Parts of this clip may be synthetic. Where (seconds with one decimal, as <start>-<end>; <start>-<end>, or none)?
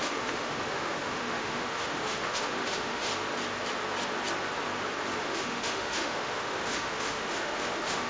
0.0-3.1; 5.2-8.1